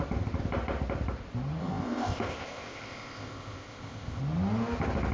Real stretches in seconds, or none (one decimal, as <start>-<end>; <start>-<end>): 0.0-1.6; 4.2-5.1